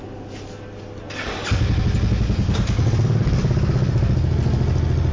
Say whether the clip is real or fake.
real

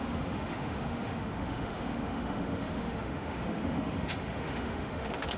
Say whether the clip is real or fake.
fake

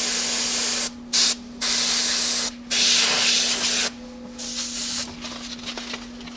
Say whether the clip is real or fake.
real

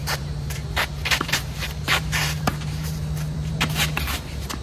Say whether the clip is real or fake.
fake